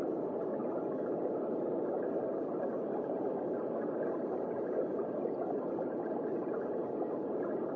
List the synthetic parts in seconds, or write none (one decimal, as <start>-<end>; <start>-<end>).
none